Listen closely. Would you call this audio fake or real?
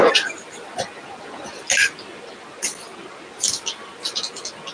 real